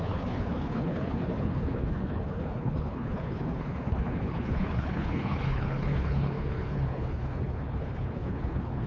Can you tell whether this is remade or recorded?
remade